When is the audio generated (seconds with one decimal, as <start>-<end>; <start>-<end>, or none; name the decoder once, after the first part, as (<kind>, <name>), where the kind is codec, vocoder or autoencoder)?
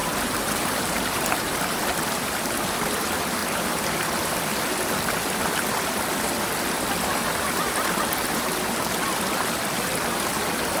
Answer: 0.0-1.8 (vocoder, BigVGAN v2)